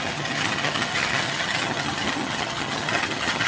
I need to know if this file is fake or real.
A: fake